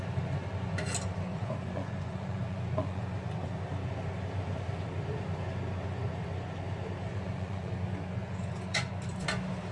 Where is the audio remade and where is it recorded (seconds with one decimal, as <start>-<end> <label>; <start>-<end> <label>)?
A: 0.0-1.3 recorded; 1.3-3.0 remade; 3.0-7.1 recorded; 7.1-7.7 remade; 7.7-8.2 recorded; 8.2-8.9 remade; 8.9-9.7 recorded